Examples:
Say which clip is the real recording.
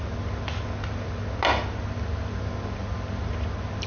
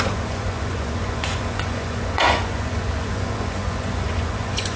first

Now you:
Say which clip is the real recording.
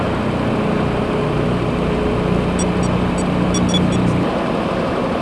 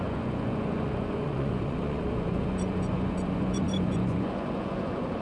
first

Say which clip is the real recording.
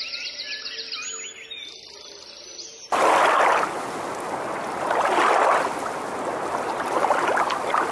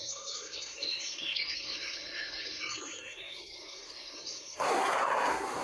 first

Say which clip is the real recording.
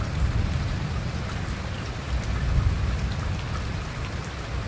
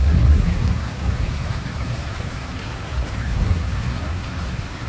first